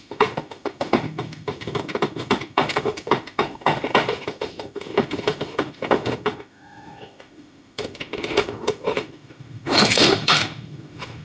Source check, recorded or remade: remade